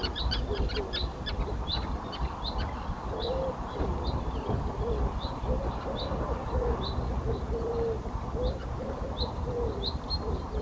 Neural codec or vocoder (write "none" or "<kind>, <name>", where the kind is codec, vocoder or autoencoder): none